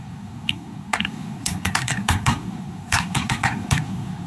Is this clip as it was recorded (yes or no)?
no